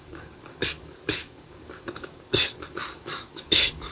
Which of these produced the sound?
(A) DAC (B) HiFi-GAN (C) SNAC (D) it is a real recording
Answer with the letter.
A